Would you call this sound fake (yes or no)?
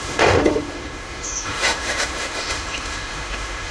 yes